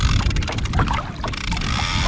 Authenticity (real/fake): real